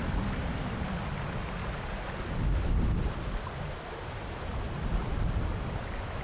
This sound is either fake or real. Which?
real